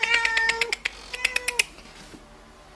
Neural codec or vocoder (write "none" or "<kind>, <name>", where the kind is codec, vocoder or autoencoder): none